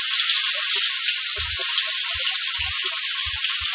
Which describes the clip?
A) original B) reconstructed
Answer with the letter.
A